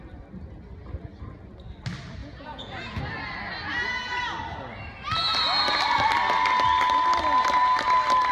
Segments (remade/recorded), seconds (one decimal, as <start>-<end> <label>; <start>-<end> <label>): 0.0-2.2 recorded; 2.2-3.0 remade; 3.0-8.3 recorded